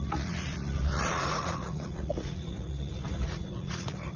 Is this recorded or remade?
remade